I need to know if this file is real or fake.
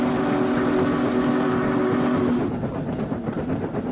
real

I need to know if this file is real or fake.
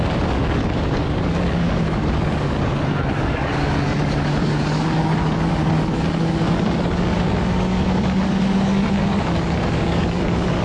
fake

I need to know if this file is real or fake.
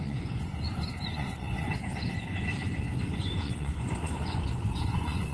fake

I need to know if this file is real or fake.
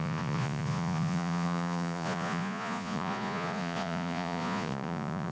fake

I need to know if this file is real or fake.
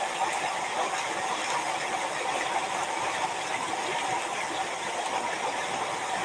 real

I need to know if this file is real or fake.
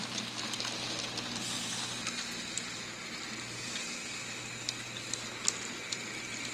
real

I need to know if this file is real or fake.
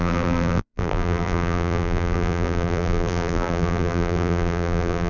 fake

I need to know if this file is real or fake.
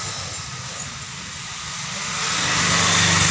real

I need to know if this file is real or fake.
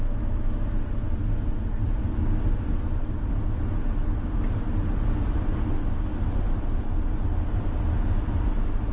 real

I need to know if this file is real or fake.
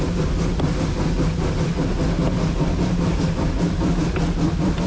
real